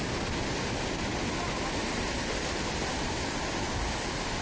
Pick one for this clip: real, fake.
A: real